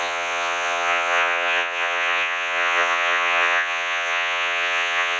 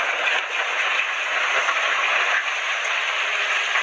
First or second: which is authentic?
second